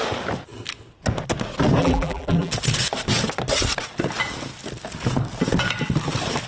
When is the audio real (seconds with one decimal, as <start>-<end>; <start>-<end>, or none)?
0.0-1.8; 2.5-6.5